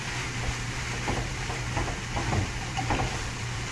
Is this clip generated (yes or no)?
yes